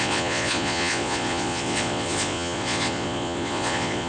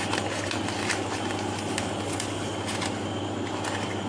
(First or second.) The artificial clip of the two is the first